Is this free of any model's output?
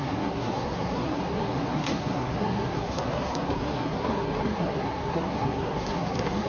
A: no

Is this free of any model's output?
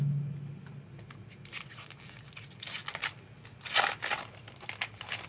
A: yes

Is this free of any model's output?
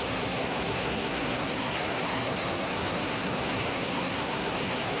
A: no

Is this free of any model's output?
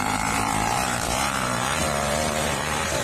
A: no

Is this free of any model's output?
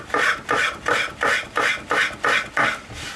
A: yes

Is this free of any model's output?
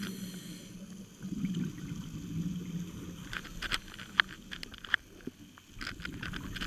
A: yes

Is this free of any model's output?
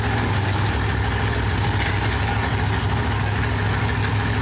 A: yes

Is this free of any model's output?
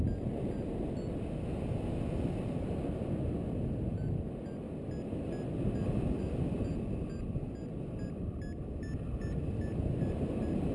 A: yes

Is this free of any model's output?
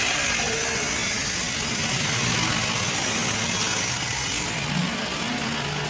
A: yes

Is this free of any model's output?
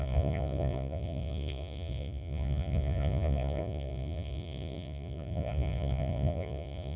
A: no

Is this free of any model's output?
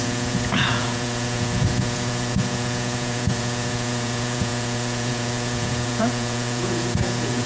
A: no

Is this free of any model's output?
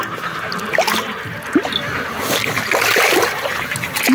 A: yes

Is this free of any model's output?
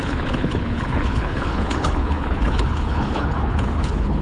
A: no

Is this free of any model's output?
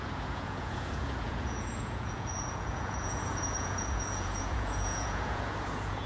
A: no